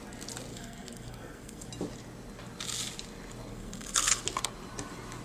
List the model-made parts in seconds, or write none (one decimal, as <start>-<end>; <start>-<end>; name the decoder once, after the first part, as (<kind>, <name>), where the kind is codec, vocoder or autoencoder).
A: 0.5-1.7 (codec, SNAC); 3.5-4.2